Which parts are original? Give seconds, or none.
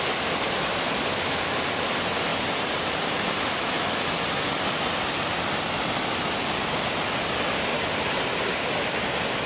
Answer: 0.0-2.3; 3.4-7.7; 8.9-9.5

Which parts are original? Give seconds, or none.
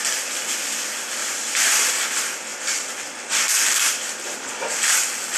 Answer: 0.0-1.2; 1.9-2.5; 5.0-5.4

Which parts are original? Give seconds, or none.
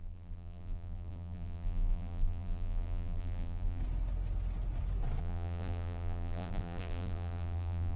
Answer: 3.8-5.2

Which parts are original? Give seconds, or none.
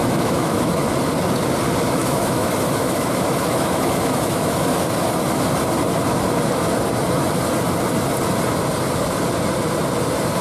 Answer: 0.9-2.0; 4.7-10.4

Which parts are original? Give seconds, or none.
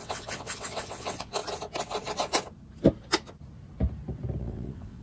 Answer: 1.4-4.4